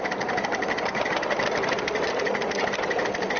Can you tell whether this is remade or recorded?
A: recorded